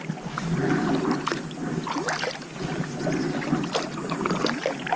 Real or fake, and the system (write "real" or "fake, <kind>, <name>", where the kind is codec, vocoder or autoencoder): real